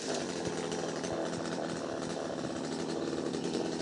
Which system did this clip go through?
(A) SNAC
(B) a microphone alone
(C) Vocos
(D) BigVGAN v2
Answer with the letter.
D